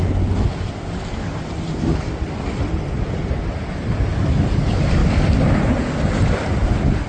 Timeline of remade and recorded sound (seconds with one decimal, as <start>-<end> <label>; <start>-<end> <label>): 0.0-7.1 recorded